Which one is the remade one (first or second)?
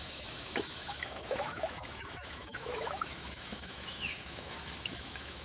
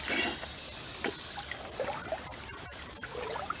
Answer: first